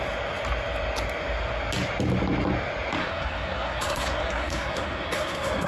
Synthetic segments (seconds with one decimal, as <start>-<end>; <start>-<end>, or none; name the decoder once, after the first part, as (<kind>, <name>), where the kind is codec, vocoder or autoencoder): 3.0-5.7 (codec, SNAC)

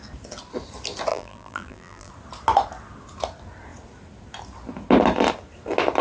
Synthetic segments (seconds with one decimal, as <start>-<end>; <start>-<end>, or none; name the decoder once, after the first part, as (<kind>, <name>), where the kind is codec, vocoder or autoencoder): 1.1-2.1 (vocoder, BigVGAN v2)

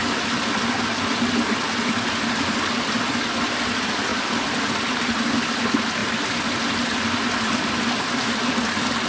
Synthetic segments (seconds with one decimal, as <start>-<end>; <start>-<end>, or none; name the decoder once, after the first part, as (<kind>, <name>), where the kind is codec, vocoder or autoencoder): none

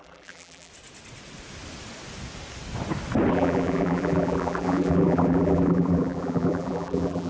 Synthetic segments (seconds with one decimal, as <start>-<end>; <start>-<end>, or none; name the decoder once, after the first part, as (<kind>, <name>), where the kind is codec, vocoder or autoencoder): 0.0-0.7 (vocoder, BigVGAN v2); 3.3-7.3